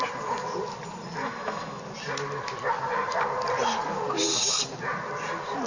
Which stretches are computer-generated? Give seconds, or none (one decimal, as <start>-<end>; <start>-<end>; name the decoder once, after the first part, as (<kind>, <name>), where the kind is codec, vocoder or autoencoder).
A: 1.2-1.8 (autoencoder, DAC-VAE)